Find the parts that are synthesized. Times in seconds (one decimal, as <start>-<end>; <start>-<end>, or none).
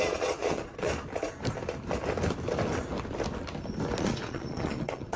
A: 0.0-0.9; 4.0-5.2